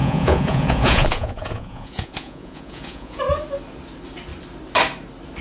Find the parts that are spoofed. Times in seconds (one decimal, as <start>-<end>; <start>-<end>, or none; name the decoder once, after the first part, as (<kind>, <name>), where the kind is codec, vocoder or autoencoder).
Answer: 0.0-3.2 (vocoder, Vocos)